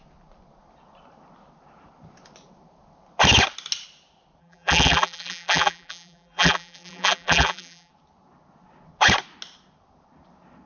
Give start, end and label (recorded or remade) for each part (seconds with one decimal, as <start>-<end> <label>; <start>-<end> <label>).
0.0-4.4 recorded; 4.4-7.9 remade; 7.9-10.7 recorded